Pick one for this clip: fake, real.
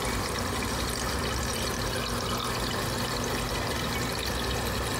real